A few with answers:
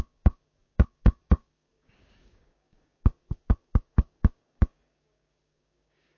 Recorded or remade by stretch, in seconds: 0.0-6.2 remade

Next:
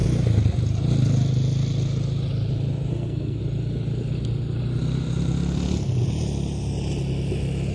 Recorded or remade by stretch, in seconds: 0.0-2.9 recorded; 2.9-3.4 remade; 3.4-7.7 recorded